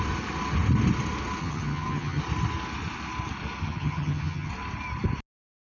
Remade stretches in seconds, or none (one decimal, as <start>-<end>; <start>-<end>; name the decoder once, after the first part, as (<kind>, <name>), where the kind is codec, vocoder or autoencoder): 1.4-2.2 (vocoder, HiFi-GAN); 3.6-4.5